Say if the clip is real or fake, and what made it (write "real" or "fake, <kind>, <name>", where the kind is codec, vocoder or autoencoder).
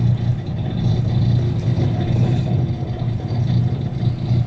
real